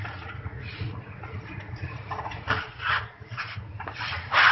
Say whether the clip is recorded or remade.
remade